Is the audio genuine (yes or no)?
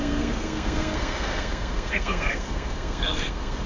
no